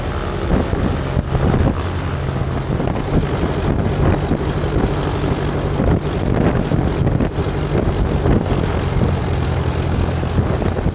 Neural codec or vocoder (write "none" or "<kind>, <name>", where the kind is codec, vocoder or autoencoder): none